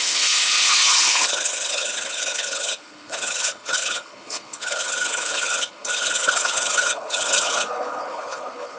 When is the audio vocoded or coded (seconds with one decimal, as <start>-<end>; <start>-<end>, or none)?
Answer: 0.0-8.8

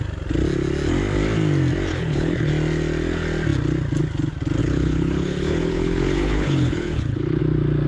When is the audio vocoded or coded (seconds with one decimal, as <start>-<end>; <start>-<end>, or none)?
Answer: 1.9-2.5; 4.6-7.4

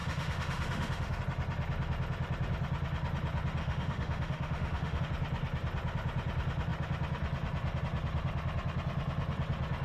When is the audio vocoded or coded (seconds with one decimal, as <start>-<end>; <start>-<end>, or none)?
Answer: 0.0-1.2; 3.6-5.0

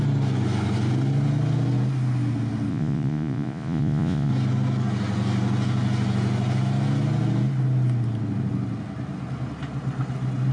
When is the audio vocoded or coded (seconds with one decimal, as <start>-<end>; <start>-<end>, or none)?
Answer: 2.7-4.3

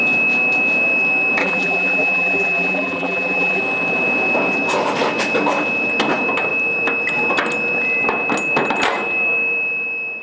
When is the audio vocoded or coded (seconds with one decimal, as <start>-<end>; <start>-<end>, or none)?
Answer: 1.4-3.6

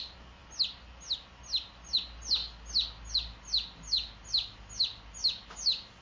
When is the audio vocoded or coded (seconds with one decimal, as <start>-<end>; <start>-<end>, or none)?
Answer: none

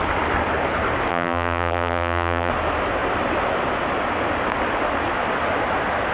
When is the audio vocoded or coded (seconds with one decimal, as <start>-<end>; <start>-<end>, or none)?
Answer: 1.1-2.5